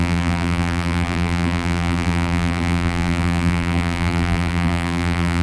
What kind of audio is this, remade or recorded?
remade